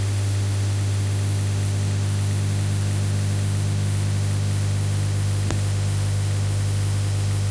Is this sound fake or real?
fake